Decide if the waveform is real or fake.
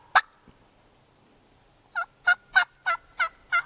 real